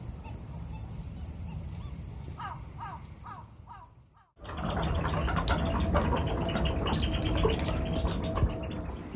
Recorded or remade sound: recorded